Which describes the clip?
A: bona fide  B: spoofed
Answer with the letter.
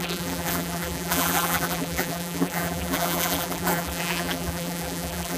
B